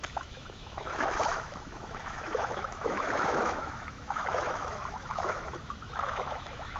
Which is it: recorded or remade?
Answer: remade